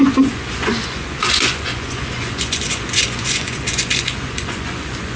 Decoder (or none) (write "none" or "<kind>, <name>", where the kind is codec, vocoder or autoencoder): vocoder, Vocos